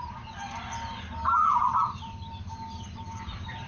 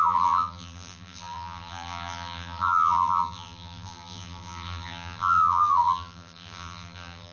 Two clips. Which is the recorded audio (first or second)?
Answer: first